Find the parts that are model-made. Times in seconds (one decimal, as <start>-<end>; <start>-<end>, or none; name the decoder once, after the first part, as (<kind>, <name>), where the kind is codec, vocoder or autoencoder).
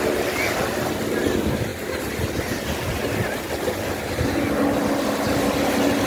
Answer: none